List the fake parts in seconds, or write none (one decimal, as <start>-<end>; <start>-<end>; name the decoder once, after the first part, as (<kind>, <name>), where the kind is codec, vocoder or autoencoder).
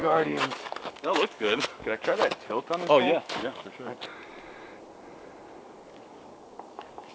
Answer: 0.0-4.1 (codec, DAC); 5.6-7.1